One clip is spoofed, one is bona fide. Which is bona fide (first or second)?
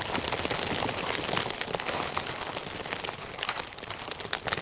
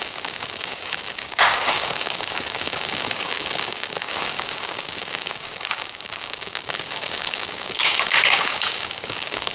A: first